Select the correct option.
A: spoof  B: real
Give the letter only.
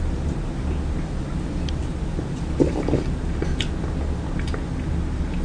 B